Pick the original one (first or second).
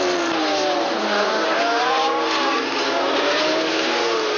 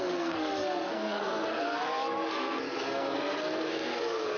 first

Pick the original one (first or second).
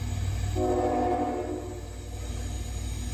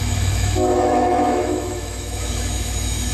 first